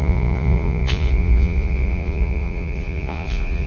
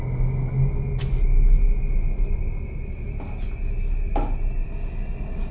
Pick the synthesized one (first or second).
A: first